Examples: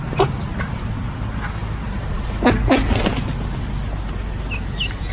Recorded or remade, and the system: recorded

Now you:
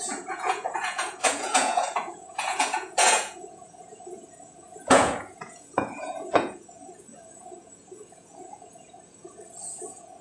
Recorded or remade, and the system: remade, vocoder, Vocos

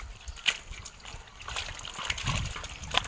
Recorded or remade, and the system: recorded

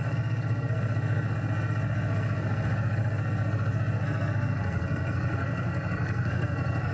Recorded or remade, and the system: remade, codec, SNAC